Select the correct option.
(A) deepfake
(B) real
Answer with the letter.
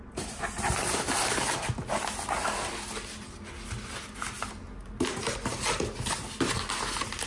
B